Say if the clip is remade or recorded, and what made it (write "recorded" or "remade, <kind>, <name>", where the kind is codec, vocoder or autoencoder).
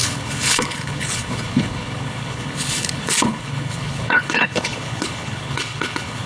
remade, codec, HILCodec